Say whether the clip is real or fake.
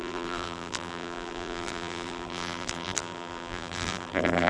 fake